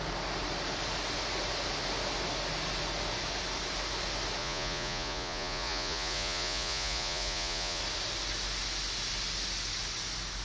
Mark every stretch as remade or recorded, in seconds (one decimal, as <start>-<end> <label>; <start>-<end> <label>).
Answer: 0.0-4.4 recorded; 4.4-7.8 remade; 7.8-10.4 recorded